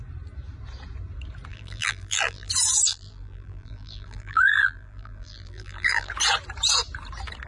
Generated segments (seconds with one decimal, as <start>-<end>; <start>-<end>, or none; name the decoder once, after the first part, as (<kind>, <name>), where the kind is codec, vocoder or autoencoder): 1.5-2.5 (vocoder, BigVGAN v2); 2.9-6.1

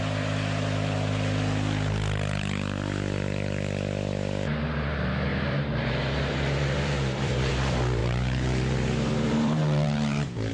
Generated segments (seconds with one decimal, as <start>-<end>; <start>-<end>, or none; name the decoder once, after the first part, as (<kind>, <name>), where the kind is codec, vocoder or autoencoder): 5.3-7.5 (vocoder, BigVGAN v2); 8.0-10.5

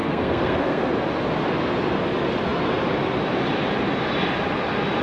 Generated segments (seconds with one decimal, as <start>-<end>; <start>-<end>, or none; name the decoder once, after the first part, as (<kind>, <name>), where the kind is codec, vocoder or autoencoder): 0.0-0.9 (codec, SNAC)